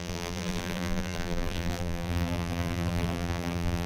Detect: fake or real fake